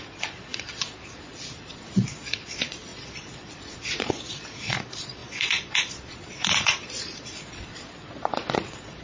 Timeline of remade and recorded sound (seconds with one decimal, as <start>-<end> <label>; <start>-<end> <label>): 0.0-9.0 remade